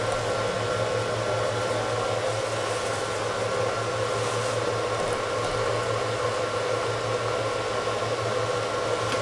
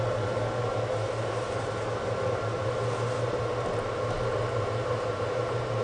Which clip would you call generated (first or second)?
second